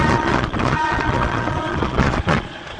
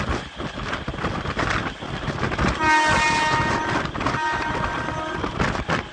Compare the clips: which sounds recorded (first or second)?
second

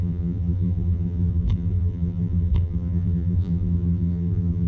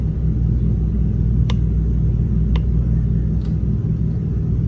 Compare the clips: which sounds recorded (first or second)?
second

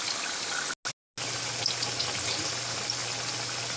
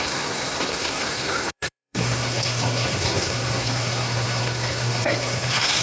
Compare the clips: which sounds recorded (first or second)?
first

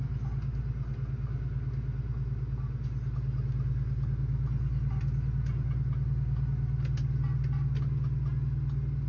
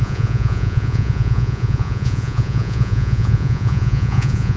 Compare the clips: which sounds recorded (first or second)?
first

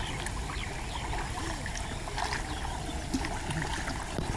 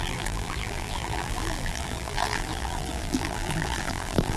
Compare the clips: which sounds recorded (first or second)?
first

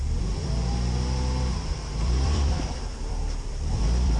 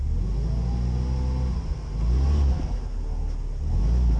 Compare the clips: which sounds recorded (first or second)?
second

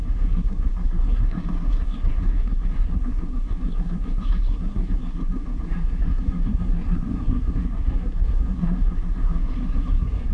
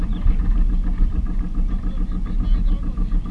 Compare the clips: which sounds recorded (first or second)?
second